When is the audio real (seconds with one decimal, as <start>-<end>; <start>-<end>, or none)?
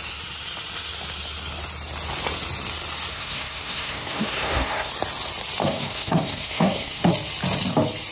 0.0-3.1; 4.9-5.6; 7.1-8.1